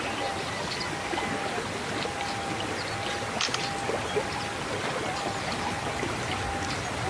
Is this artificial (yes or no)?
no